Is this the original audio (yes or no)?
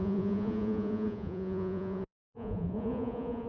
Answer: no